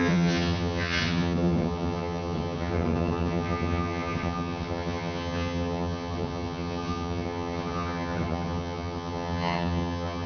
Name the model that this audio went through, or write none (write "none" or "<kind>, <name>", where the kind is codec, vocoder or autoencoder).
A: vocoder, HiFi-GAN